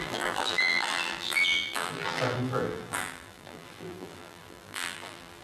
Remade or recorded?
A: remade